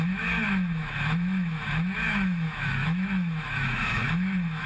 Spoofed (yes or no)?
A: yes